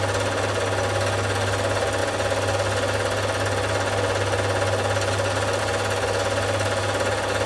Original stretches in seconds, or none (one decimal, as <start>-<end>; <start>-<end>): 0.0-7.5